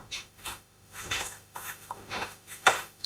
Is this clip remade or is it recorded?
remade